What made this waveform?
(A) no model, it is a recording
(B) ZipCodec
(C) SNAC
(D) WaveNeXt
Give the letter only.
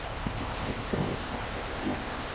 B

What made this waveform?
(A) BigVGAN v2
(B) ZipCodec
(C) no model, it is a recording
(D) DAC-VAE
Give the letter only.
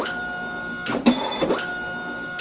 C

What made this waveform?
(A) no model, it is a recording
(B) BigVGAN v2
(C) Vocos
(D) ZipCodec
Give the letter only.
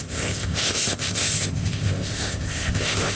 D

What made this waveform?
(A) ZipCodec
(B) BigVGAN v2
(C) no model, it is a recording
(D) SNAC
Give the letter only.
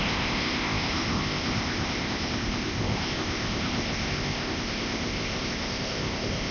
A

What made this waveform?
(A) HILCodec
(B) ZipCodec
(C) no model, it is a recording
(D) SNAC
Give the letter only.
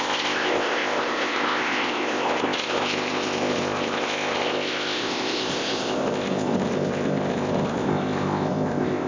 B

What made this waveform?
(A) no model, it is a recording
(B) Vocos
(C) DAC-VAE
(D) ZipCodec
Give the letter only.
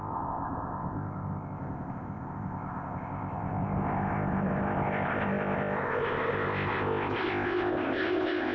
D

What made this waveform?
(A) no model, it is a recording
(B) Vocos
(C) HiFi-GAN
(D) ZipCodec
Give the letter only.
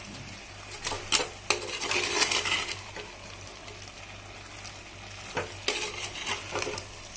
A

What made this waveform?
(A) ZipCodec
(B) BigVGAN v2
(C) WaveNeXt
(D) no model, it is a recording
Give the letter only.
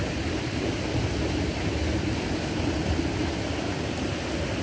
D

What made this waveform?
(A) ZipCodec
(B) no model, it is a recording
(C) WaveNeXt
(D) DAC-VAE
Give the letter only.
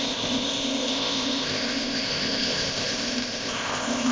A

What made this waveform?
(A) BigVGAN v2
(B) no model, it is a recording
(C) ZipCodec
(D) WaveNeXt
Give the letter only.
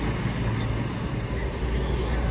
B